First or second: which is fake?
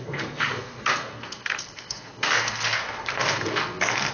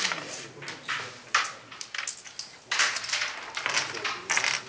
first